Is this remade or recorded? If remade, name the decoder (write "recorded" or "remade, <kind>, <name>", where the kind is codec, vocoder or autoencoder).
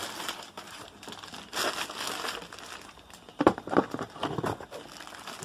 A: recorded